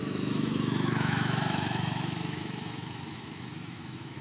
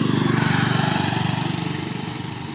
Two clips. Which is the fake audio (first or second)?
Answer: first